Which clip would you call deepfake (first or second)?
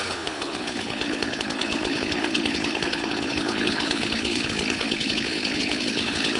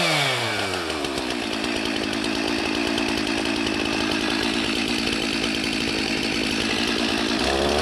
first